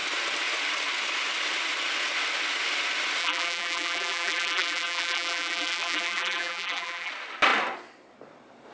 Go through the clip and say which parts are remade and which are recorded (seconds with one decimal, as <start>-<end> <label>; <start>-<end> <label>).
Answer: 0.0-3.2 recorded; 3.2-7.1 remade; 7.1-8.7 recorded